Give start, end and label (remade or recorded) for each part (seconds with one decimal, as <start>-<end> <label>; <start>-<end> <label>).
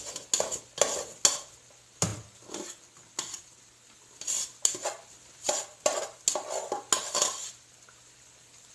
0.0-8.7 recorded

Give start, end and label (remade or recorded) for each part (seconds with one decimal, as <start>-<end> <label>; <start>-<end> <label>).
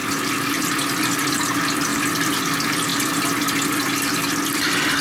0.0-5.0 recorded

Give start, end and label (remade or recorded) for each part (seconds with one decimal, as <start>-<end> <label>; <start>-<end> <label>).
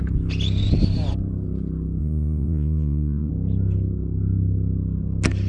0.0-2.0 recorded; 2.0-3.3 remade; 3.3-5.5 recorded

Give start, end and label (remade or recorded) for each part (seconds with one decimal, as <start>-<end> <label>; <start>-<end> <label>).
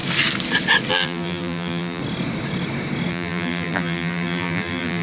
0.0-0.9 recorded; 0.9-2.0 remade; 2.0-3.1 recorded; 3.1-5.0 remade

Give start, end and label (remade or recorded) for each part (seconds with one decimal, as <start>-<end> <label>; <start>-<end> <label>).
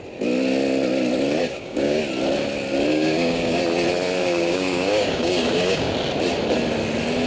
0.0-1.4 recorded; 1.4-2.0 remade; 2.0-2.9 recorded; 2.9-3.6 remade; 3.6-4.2 recorded; 4.2-5.9 remade; 5.9-7.3 recorded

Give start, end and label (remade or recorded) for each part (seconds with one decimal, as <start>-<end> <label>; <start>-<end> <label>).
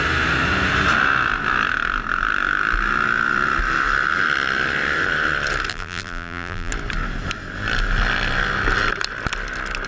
0.0-5.7 recorded; 5.7-6.7 remade; 6.7-9.9 recorded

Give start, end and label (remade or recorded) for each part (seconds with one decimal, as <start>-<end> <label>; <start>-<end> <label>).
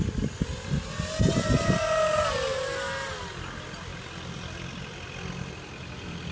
0.0-6.3 recorded